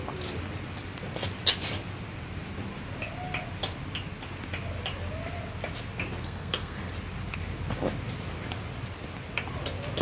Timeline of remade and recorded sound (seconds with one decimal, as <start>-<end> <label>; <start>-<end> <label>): 0.0-6.2 recorded; 6.2-6.9 remade; 6.9-10.0 recorded